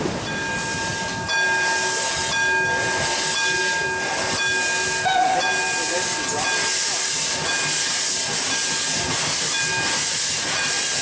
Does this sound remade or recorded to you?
recorded